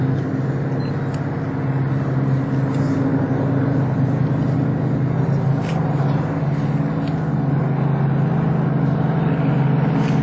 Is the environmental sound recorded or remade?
recorded